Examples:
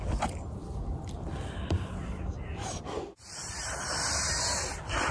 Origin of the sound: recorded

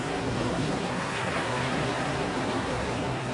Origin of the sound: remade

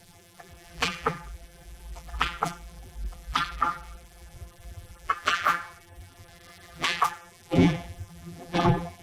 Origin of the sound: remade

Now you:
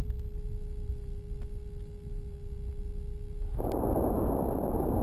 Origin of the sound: recorded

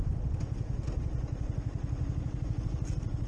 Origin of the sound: recorded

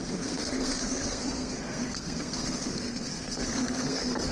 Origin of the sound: remade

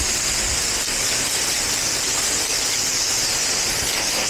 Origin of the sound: recorded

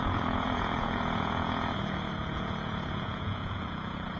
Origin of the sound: remade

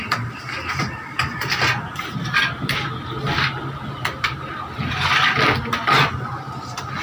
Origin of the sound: recorded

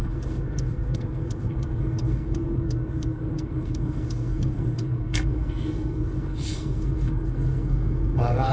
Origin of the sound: remade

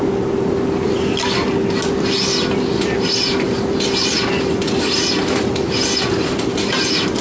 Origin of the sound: recorded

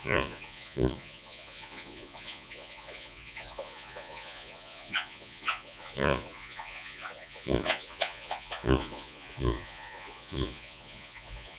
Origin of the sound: remade